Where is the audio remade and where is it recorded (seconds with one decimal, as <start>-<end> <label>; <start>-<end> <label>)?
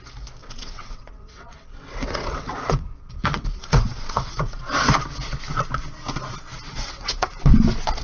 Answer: 0.0-0.4 recorded; 0.4-4.6 remade; 4.6-6.7 recorded; 6.7-7.5 remade; 7.5-8.0 recorded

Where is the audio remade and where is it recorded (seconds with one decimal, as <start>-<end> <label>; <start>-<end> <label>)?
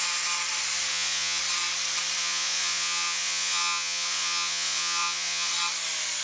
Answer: 0.0-0.9 recorded; 0.9-1.4 remade; 1.4-2.2 recorded; 2.2-5.5 remade; 5.5-6.2 recorded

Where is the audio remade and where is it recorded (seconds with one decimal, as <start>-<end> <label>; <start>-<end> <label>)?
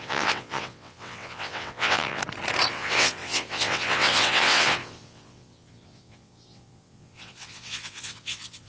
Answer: 0.0-2.2 remade; 2.2-2.7 recorded; 2.7-8.7 remade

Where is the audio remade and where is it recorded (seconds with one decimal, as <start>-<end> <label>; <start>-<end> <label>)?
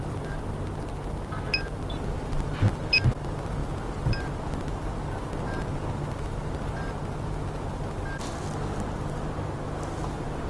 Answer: 0.0-10.5 recorded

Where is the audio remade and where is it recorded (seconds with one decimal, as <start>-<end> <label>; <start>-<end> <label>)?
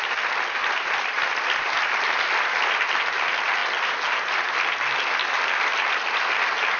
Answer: 0.0-0.6 recorded; 0.6-1.8 remade; 1.8-6.8 recorded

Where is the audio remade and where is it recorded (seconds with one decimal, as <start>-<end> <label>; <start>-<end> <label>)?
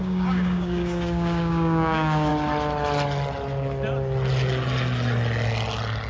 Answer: 0.0-2.3 remade; 2.3-6.1 recorded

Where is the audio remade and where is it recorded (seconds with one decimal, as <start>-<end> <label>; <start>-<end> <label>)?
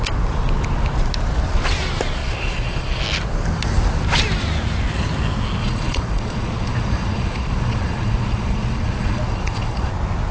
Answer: 0.0-2.2 recorded; 2.2-3.0 remade; 3.0-5.6 recorded; 5.6-9.9 remade; 9.9-10.3 recorded